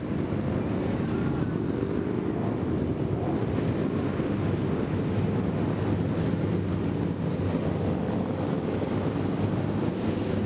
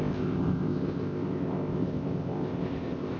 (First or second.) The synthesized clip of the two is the second